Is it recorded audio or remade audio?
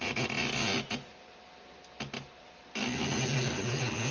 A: recorded